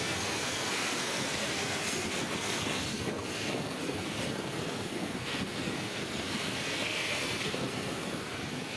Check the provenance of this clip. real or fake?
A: fake